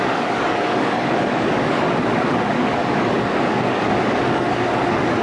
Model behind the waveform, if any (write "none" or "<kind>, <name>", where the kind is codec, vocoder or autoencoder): codec, DAC